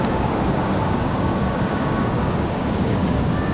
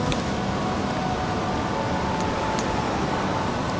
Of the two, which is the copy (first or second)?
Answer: first